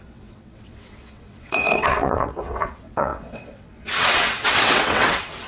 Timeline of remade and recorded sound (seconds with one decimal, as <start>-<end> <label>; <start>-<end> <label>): 0.0-5.5 remade

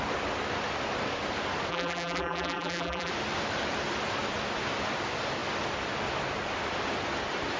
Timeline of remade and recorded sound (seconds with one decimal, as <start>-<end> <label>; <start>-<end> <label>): 0.0-1.7 recorded; 1.7-3.1 remade; 3.1-7.6 recorded

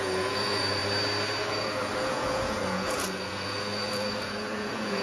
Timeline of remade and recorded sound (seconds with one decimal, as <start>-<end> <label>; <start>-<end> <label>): 0.0-0.8 remade; 0.8-1.5 recorded; 1.5-5.0 remade

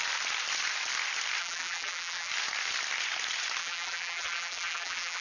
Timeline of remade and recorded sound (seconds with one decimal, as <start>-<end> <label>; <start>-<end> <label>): 0.0-1.4 recorded; 1.4-2.3 remade; 2.3-3.6 recorded; 3.6-5.2 remade

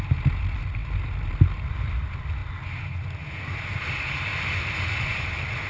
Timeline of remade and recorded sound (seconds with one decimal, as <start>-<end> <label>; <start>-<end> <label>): 0.0-5.7 recorded

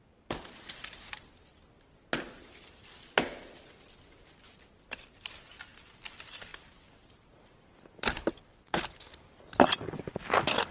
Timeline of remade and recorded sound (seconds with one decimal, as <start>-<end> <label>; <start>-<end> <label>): 0.0-6.5 recorded; 6.5-10.7 remade

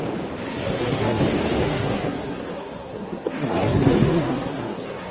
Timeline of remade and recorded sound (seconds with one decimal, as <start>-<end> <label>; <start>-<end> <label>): 0.0-0.4 recorded; 0.4-1.2 remade; 1.2-1.6 recorded; 1.6-5.1 remade